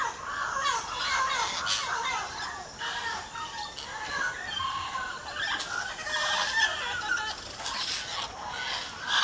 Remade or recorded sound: recorded